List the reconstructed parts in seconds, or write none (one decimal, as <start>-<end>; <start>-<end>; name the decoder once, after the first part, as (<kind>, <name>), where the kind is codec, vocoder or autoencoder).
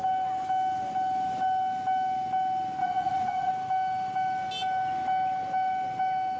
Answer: 2.8-3.5 (vocoder, Vocos)